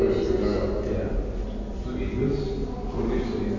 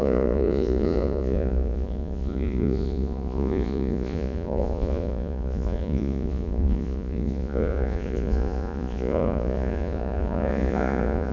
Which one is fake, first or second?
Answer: second